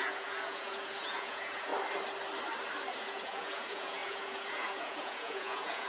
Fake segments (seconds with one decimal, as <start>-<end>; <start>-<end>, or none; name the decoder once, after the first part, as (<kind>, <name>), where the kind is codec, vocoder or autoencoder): 0.0-1.7 (vocoder, Vocos); 3.0-5.9